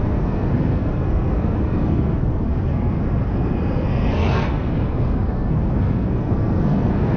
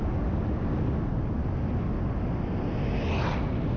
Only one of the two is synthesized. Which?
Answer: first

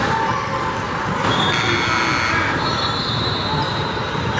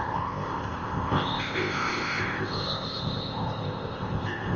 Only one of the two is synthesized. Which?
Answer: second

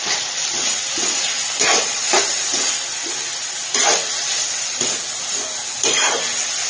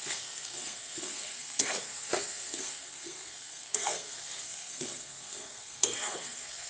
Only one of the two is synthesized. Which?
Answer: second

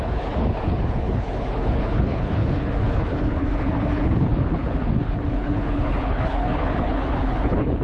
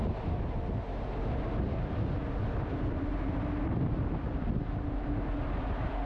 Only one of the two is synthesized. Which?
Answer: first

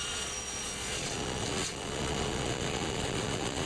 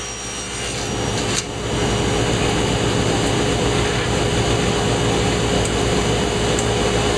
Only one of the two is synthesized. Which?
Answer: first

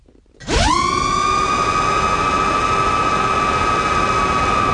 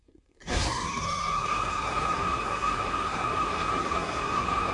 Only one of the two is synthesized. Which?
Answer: second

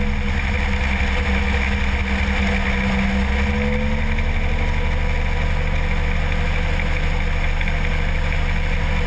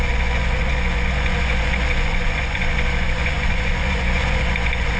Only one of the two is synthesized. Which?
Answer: second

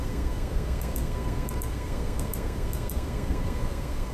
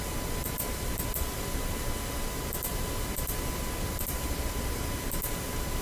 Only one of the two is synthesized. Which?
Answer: first